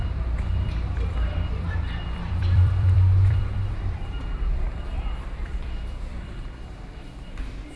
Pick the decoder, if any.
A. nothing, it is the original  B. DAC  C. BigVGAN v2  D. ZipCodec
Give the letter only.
C